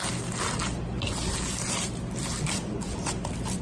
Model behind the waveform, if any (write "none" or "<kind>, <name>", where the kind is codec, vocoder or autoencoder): none